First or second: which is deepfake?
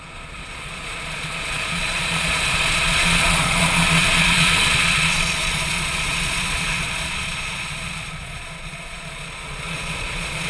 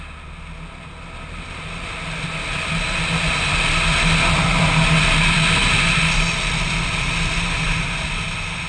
first